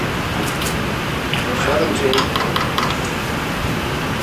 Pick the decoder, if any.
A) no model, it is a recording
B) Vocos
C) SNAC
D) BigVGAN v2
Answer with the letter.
A